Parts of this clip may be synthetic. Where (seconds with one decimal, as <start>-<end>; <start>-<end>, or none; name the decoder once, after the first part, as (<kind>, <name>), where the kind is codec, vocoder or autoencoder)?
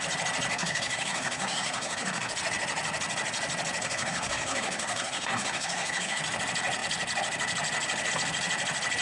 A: 0.5-2.3 (codec, SNAC); 3.8-6.2